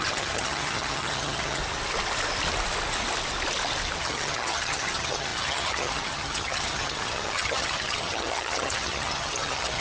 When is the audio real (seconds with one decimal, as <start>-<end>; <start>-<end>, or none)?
1.6-4.0